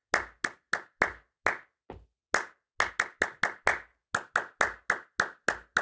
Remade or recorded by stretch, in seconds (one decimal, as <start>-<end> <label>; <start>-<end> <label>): 0.0-5.8 recorded